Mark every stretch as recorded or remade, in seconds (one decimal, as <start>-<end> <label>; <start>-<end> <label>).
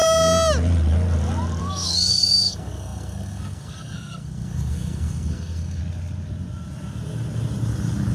0.0-1.6 recorded; 1.6-5.8 remade; 5.8-8.1 recorded